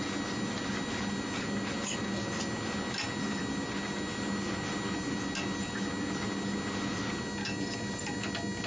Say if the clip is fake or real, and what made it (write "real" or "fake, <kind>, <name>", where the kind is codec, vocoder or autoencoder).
real